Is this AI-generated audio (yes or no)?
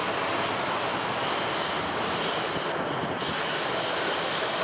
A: no